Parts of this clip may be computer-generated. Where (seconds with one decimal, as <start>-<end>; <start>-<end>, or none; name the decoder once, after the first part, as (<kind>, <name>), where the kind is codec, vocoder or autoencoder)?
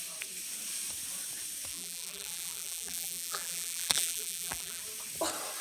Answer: 1.7-4.8 (vocoder, BigVGAN v2)